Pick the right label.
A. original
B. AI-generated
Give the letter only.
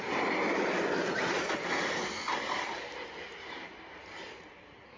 A